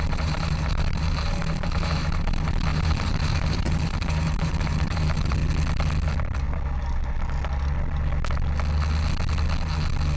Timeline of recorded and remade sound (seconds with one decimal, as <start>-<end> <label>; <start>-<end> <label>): 0.0-5.4 remade; 5.4-10.2 recorded